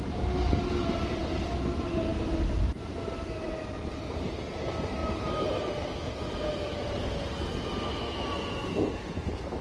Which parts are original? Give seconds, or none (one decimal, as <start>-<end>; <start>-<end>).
0.0-5.0; 5.6-9.6